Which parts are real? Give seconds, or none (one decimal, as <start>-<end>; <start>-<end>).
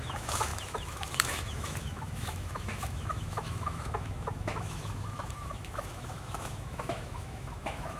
none